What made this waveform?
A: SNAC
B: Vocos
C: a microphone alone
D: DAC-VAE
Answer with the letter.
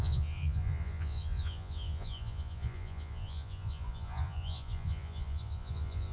B